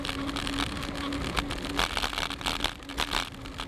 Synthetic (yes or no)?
no